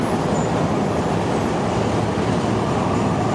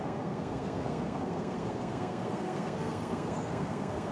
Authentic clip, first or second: first